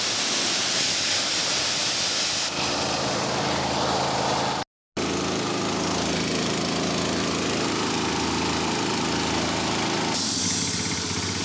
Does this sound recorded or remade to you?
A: recorded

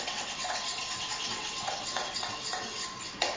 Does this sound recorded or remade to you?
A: remade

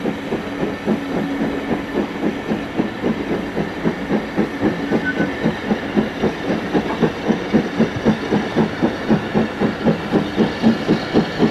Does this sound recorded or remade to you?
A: recorded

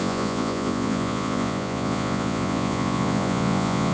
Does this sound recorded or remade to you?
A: remade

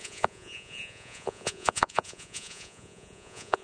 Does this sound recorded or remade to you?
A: remade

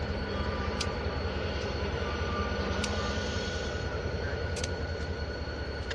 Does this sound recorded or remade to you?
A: remade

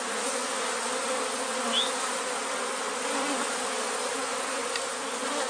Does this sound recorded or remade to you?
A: recorded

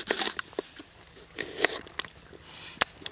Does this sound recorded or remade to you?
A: recorded